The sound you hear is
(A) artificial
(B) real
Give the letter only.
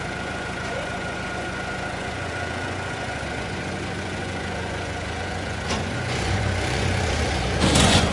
A